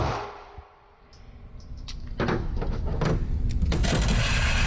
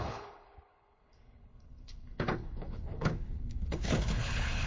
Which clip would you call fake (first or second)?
second